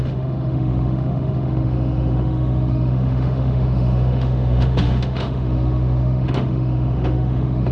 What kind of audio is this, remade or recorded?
remade